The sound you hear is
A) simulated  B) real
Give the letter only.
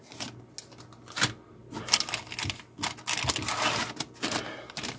B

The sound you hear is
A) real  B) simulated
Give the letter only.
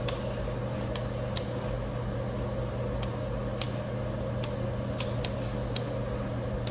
A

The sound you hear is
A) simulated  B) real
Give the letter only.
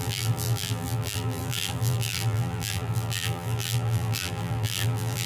A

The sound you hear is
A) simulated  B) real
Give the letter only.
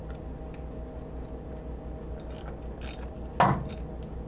B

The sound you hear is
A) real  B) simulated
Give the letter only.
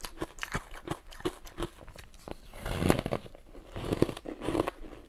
A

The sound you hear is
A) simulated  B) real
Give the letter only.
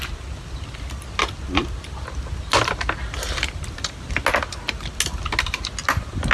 B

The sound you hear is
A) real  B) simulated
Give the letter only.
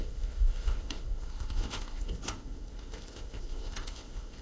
B